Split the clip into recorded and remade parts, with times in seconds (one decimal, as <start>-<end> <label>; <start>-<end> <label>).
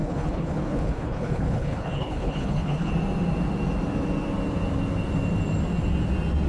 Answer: 0.0-2.9 remade; 2.9-6.5 recorded